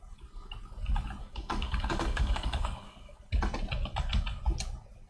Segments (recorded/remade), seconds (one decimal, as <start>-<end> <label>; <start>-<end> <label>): 0.0-1.2 recorded; 1.2-3.2 remade; 3.2-5.1 recorded